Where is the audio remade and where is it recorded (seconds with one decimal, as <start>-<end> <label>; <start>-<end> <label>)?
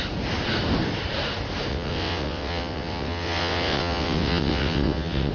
0.0-1.7 recorded; 1.7-5.3 remade